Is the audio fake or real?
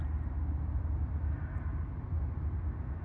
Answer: real